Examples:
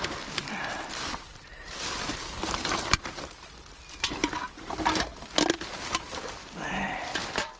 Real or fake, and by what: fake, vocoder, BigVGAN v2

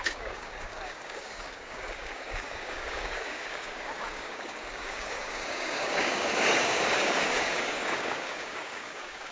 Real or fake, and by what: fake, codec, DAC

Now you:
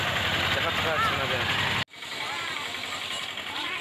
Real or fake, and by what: real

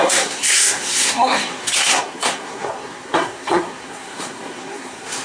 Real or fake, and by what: fake, codec, SNAC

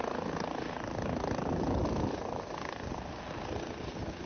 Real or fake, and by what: real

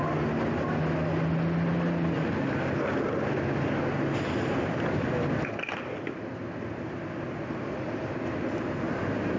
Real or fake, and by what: real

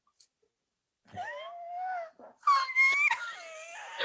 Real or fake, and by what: real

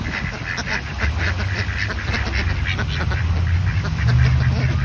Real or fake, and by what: real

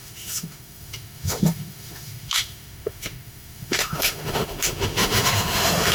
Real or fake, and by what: fake, autoencoder, DAC-VAE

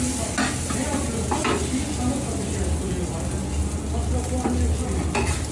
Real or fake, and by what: real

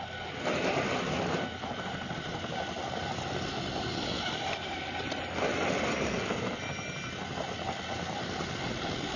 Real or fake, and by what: real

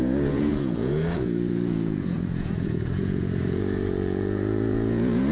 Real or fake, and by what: fake, vocoder, Vocos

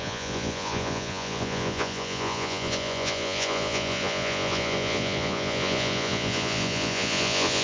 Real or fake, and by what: fake, vocoder, Vocos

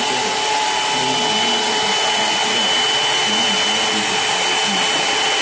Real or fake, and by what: real